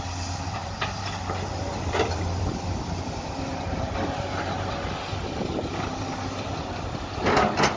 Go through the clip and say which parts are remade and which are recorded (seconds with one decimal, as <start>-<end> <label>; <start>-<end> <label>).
0.0-0.6 recorded; 0.6-4.5 remade; 4.5-7.8 recorded